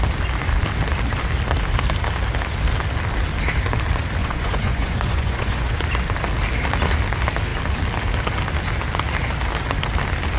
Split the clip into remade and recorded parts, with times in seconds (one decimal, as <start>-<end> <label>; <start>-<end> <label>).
0.0-4.2 recorded; 4.2-5.7 remade; 5.7-10.4 recorded